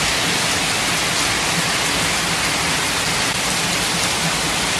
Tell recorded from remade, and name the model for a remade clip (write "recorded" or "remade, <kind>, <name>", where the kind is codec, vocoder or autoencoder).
recorded